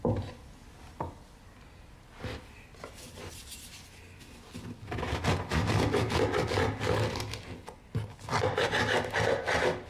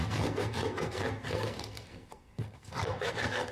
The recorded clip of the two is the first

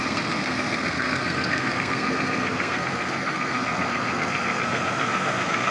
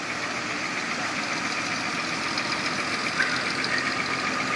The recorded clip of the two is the second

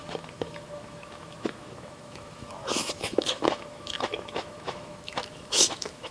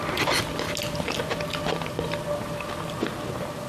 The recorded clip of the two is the second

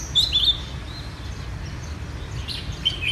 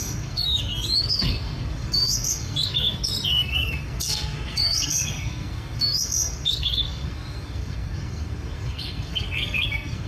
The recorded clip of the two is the first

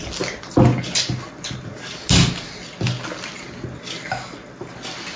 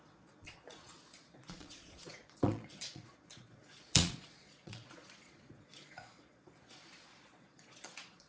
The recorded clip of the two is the first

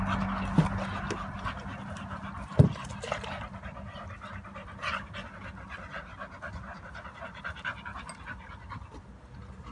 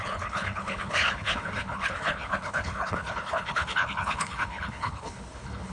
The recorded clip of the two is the first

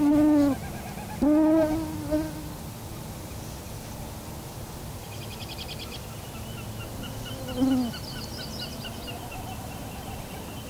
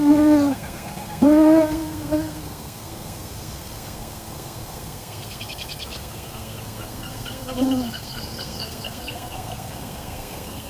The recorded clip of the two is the first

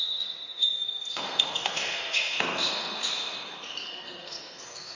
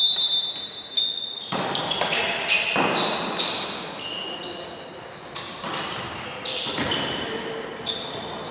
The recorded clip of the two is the second